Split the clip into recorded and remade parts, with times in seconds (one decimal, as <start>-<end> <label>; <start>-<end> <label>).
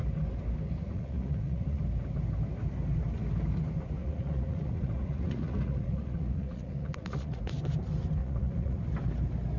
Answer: 0.0-0.8 recorded; 0.8-1.8 remade; 1.8-4.0 recorded; 4.0-7.4 remade; 7.4-8.2 recorded; 8.2-8.8 remade; 8.8-9.6 recorded